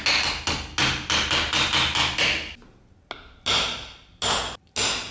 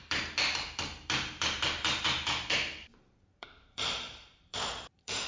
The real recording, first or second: first